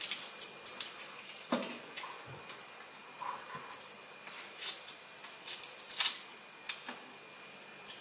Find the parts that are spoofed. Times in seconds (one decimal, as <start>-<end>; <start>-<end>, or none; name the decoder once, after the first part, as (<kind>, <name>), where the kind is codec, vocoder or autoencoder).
1.7-2.6 (vocoder, Vocos)